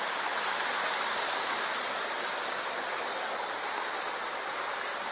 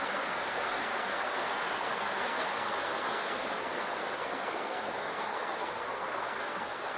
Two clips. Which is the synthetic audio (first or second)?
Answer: second